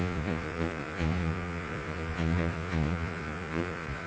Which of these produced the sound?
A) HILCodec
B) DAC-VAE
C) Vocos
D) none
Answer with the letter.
C